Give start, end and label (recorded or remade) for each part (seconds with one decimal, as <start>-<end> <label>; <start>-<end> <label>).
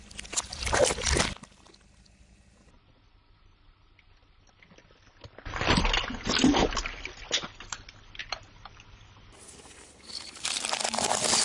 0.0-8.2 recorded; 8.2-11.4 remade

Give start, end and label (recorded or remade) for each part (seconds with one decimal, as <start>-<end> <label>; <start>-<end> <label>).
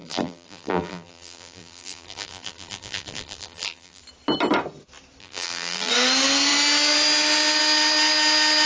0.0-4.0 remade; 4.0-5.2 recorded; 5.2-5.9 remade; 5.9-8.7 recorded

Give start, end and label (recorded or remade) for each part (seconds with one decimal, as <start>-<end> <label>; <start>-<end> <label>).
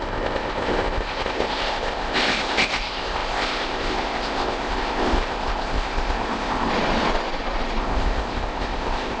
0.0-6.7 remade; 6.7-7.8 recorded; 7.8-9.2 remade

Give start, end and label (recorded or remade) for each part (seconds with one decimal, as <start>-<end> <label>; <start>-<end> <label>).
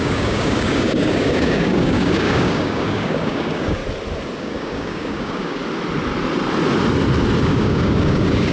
0.0-3.8 remade; 3.8-4.4 recorded; 4.4-5.6 remade; 5.6-7.4 recorded; 7.4-8.5 remade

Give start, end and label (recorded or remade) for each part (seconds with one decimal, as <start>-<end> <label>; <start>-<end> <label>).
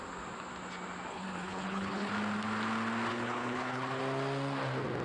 0.0-1.1 recorded; 1.1-2.1 remade; 2.1-3.1 recorded; 3.1-4.0 remade; 4.0-5.0 recorded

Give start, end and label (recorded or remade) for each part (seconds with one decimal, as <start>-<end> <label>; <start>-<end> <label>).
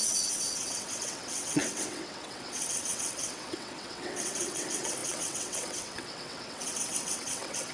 0.0-7.7 remade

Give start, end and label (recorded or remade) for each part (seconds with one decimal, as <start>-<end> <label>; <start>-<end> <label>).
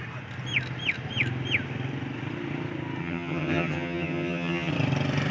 0.0-3.0 recorded; 3.0-4.7 remade; 4.7-5.3 recorded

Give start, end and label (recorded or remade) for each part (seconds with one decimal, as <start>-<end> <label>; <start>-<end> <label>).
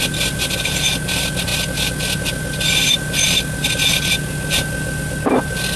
0.0-5.8 recorded